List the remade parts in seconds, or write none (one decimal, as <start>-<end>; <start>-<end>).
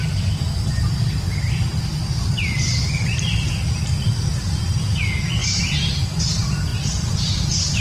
1.9-4.0